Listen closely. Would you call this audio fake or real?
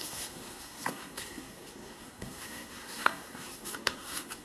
fake